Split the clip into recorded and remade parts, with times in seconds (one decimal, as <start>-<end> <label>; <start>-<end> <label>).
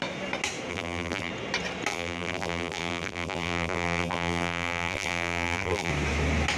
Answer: 0.0-0.7 recorded; 0.7-1.3 remade; 1.3-1.9 recorded; 1.9-5.9 remade; 5.9-6.6 recorded